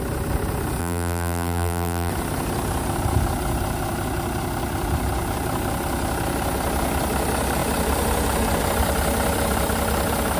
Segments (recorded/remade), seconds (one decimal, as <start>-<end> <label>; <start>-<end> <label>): 0.0-0.8 recorded; 0.8-2.1 remade; 2.1-10.4 recorded